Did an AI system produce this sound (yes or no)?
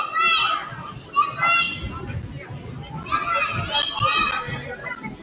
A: no